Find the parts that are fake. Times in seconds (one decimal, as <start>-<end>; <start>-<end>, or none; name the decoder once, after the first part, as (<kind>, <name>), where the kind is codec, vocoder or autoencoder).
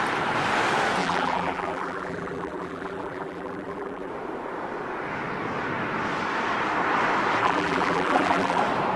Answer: 1.0-4.1 (vocoder, BigVGAN v2); 7.4-8.6